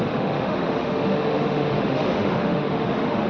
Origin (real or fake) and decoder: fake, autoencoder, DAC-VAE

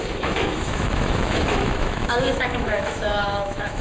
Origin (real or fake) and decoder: fake, autoencoder, DAC-VAE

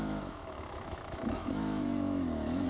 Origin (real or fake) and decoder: fake, autoencoder, DAC-VAE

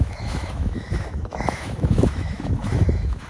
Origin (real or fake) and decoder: fake, autoencoder, DAC-VAE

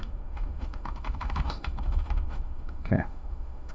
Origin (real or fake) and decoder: fake, autoencoder, DAC-VAE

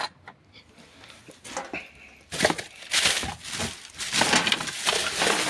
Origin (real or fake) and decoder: real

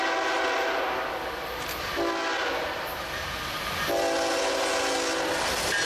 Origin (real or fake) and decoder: real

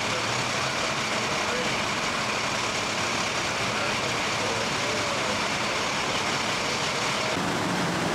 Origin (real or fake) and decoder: real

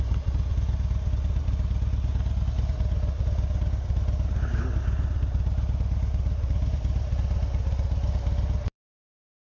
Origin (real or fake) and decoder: real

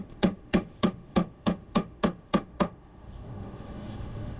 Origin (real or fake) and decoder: fake, autoencoder, DAC-VAE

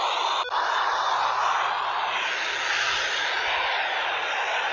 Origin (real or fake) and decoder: real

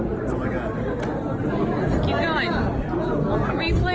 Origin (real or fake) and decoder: real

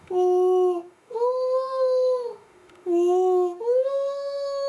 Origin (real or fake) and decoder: fake, autoencoder, DAC-VAE